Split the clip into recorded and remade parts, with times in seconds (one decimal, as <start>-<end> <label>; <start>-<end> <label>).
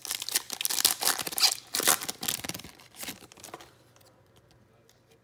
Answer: 0.0-5.2 recorded